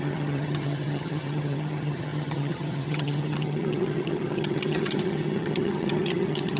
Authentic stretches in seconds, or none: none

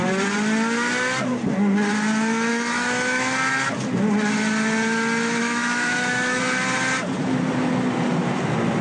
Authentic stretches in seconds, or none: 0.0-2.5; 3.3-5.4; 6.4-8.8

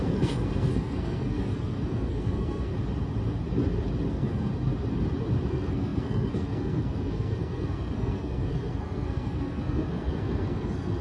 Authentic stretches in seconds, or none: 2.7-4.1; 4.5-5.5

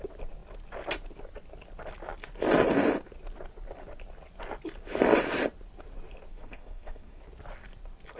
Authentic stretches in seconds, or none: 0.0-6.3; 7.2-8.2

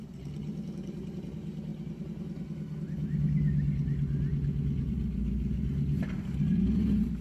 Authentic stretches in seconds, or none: 0.0-7.2